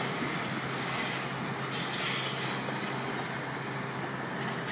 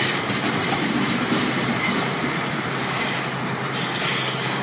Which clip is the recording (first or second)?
first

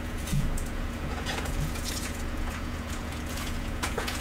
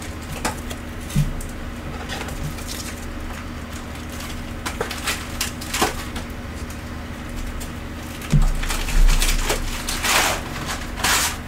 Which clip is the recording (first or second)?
second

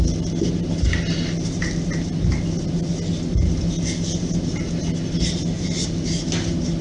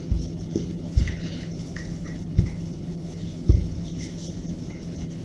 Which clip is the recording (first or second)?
first